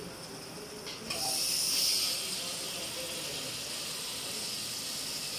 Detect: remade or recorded recorded